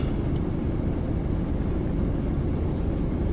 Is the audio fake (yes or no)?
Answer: no